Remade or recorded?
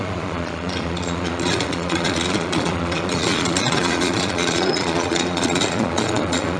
remade